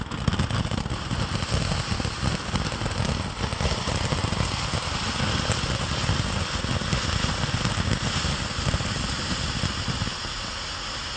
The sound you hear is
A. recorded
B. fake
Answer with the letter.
A